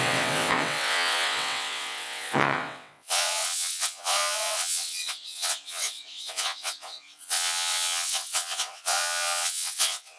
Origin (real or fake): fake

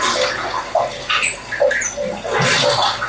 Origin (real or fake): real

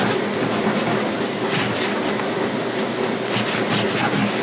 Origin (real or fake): real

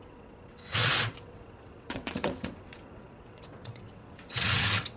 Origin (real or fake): fake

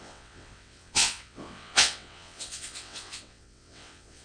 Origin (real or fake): fake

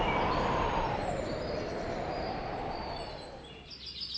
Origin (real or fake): real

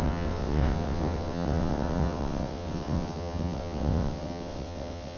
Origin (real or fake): fake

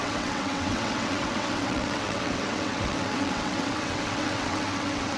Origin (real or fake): fake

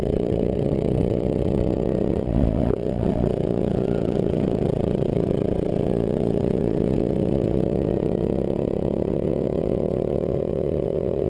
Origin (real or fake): fake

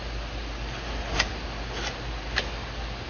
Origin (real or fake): real